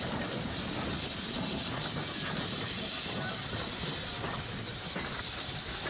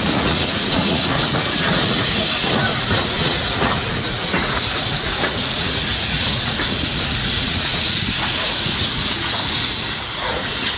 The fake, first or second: second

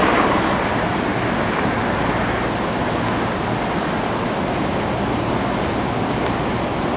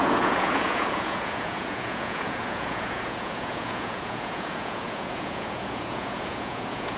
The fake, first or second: second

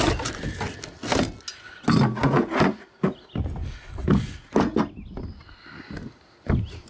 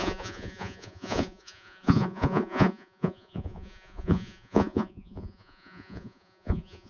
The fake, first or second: second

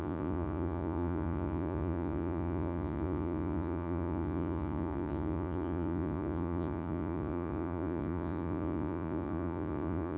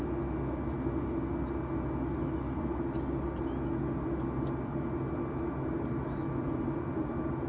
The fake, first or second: first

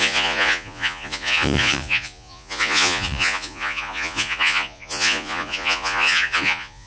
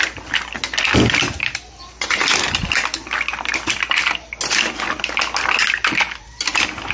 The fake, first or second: first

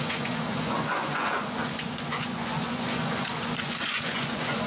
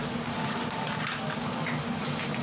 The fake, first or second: first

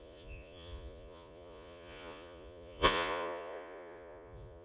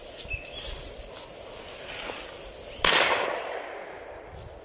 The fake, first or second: first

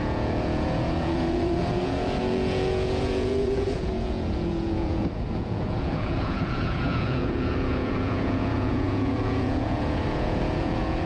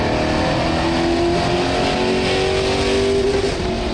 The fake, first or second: first